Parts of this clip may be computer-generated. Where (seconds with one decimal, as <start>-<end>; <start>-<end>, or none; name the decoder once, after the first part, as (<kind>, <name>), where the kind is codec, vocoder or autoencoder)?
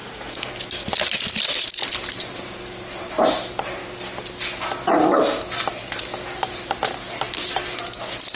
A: 0.0-0.5 (autoencoder, DAC-VAE)